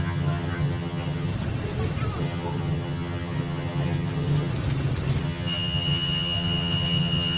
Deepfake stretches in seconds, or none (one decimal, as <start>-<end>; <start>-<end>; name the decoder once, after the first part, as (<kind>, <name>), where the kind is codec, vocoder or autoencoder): 0.0-1.3 (vocoder, HiFi-GAN); 2.2-4.5; 5.2-7.4